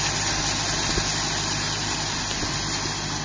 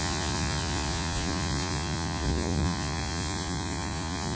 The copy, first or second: second